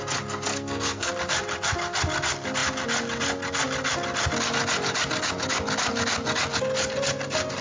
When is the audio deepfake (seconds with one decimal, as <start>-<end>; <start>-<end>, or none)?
0.5-1.1